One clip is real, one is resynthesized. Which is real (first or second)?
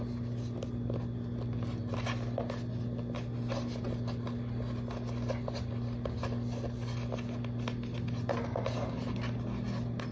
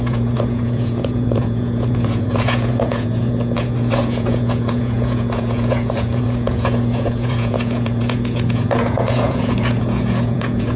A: first